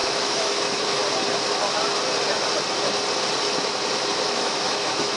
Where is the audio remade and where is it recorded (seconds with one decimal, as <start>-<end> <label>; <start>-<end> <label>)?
0.0-1.0 remade; 1.0-4.1 recorded; 4.1-5.2 remade